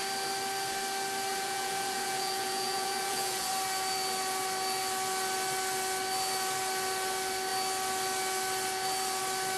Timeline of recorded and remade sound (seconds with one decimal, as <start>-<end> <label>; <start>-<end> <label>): 0.0-1.3 recorded; 1.3-3.5 remade; 3.5-9.6 recorded